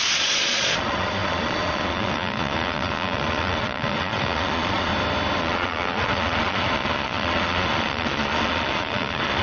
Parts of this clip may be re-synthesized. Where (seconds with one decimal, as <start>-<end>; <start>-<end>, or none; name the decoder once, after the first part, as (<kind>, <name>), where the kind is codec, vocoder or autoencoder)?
0.0-4.9 (vocoder, Vocos); 5.4-9.4

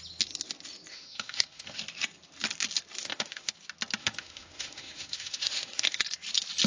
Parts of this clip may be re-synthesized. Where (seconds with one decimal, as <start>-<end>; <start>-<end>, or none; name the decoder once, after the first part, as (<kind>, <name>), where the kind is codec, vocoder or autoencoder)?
0.9-1.8 (autoencoder, DAC-VAE); 3.0-3.5; 4.0-6.0

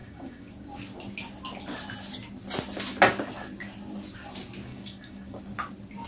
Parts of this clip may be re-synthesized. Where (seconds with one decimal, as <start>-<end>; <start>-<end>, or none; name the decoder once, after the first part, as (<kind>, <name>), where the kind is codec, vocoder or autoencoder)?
0.0-0.5 (codec, DAC); 4.7-5.4

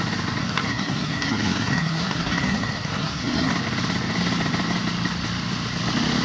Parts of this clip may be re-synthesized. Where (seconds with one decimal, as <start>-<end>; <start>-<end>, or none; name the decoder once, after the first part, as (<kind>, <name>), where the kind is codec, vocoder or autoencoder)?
0.4-3.5 (codec, SNAC)

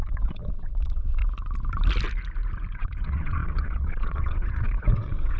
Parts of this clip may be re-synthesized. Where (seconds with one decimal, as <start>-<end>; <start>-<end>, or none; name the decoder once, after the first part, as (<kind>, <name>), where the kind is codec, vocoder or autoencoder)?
0.0-1.2 (vocoder, WaveNeXt); 2.7-5.4

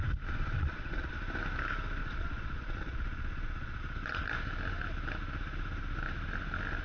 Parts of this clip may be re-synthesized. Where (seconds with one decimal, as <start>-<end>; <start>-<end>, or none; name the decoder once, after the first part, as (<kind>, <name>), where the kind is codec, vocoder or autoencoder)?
0.6-1.1 (vocoder, Vocos); 2.0-3.8